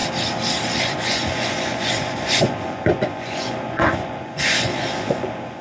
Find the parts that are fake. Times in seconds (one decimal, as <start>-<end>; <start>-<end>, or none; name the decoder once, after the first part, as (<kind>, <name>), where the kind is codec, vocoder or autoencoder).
0.8-5.6 (vocoder, Vocos)

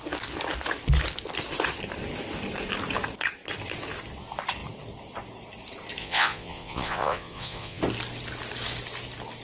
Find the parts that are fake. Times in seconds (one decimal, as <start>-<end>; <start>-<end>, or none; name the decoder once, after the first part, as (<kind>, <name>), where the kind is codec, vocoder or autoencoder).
6.0-7.8 (vocoder, Vocos)